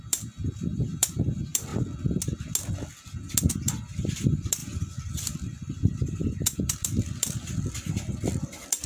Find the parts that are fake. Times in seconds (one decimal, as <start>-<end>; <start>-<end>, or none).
0.0-1.7; 3.5-8.9